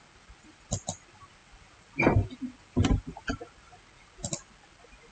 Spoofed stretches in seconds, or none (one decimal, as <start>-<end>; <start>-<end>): none